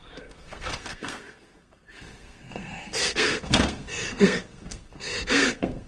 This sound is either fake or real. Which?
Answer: fake